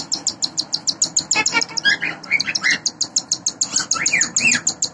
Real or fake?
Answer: real